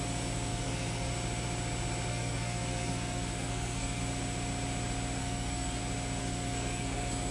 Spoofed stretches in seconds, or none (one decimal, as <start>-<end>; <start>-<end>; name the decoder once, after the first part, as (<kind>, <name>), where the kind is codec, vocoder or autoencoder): 0.5-1.1 (codec, SNAC); 2.1-4.0; 5.2-5.8; 6.2-7.3